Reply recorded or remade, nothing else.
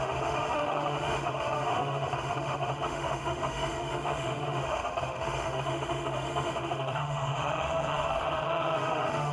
remade